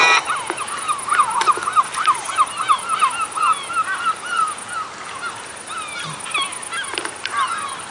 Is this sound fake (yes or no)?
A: no